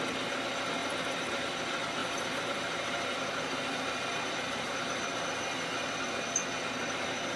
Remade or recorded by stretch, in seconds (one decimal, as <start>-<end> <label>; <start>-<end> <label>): 0.0-0.8 recorded; 0.8-1.3 remade; 1.3-2.0 recorded; 2.0-5.3 remade; 5.3-7.4 recorded